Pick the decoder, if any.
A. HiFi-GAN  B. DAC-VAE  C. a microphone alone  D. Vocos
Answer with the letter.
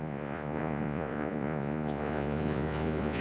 D